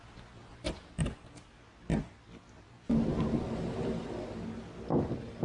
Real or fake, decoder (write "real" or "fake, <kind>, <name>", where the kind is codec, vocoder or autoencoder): real